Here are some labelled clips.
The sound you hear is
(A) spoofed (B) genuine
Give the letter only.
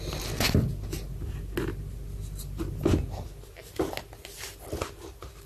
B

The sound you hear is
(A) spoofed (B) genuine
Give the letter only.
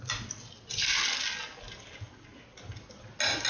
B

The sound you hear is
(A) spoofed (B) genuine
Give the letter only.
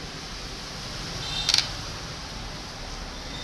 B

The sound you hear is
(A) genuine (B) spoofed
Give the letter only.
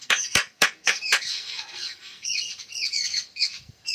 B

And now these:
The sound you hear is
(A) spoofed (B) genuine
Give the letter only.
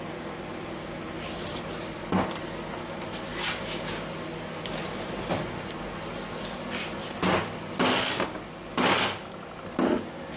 B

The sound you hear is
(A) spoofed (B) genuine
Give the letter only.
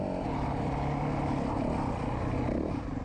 B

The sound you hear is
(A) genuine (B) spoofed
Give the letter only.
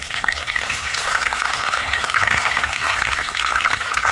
B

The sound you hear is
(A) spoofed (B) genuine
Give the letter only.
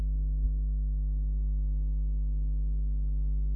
B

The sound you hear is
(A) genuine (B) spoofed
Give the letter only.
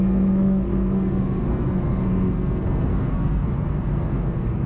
B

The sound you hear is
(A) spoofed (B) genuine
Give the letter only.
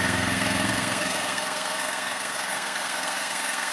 A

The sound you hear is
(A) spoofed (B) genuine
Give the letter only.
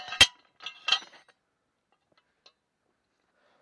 B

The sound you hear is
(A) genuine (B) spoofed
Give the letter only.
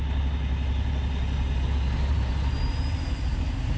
A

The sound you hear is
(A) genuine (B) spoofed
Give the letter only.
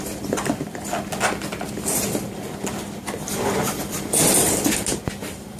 A